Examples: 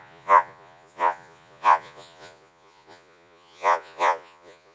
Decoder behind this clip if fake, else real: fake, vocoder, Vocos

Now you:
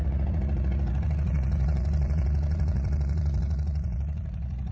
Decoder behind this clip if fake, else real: fake, vocoder, Vocos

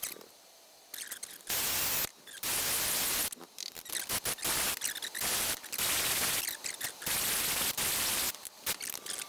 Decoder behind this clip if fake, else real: real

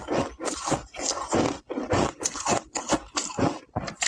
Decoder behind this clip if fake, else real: real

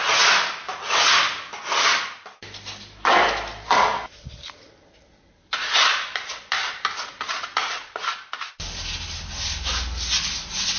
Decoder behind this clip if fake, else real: real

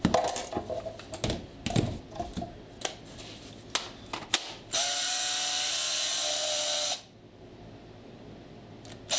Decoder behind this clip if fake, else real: real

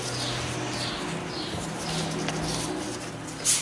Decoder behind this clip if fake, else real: real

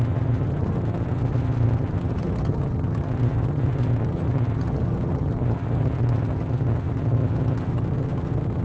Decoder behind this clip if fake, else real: fake, vocoder, HiFi-GAN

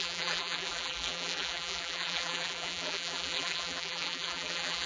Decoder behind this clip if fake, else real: fake, vocoder, BigVGAN v2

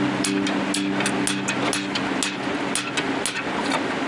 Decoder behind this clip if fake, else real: real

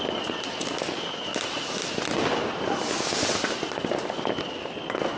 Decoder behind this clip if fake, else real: real